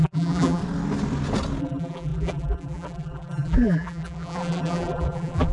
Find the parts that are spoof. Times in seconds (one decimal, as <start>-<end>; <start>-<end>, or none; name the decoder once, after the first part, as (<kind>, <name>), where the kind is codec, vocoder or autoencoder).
0.0-0.6 (vocoder, BigVGAN v2); 1.6-5.5